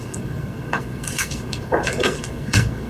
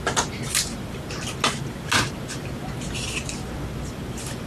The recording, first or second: second